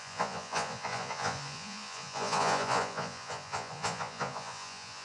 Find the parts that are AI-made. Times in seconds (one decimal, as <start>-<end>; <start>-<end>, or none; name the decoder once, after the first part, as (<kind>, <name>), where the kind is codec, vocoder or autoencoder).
0.0-5.0 (vocoder, Vocos)